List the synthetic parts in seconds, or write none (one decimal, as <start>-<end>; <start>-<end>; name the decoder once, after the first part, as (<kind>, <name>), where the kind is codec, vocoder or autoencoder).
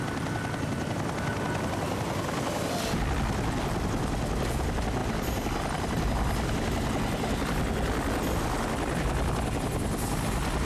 none